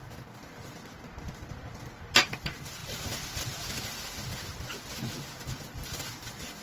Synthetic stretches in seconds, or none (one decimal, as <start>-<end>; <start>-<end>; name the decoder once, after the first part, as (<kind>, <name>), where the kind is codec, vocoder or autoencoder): 2.8-6.1 (vocoder, BigVGAN v2)